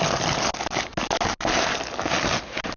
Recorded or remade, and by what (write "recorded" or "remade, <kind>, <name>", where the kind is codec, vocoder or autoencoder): recorded